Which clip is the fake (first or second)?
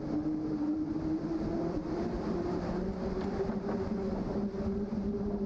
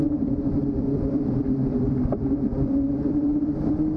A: second